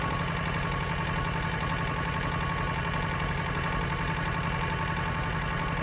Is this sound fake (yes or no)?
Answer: no